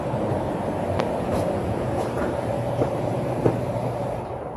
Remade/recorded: remade